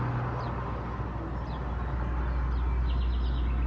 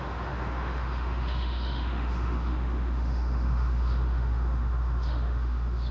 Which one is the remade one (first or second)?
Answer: second